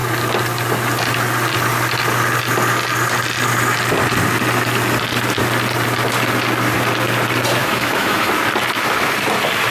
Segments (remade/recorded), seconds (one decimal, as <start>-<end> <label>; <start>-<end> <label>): 0.0-7.6 recorded; 7.6-8.3 remade; 8.3-9.7 recorded